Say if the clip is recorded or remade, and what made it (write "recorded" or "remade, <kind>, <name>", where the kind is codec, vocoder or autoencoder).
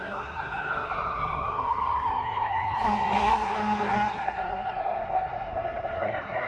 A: remade, codec, SNAC